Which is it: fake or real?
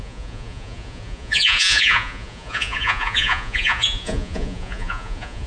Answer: fake